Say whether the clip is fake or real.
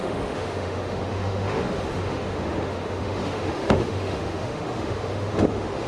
fake